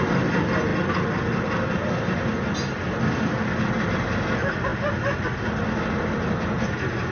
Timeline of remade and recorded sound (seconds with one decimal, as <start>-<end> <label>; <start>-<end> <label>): 0.0-7.1 recorded